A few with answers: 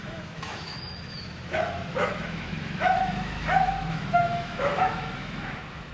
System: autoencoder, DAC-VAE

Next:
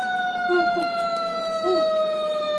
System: autoencoder, DAC-VAE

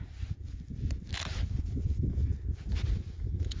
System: none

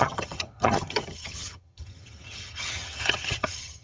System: vocoder, HiFi-GAN